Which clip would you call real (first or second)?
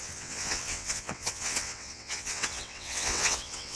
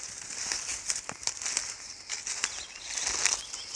second